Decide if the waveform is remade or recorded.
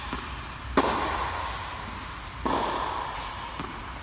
recorded